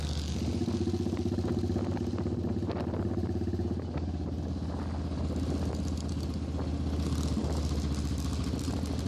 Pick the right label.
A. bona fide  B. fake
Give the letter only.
A